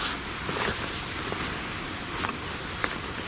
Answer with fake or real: real